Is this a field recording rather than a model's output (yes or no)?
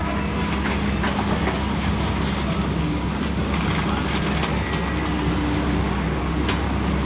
yes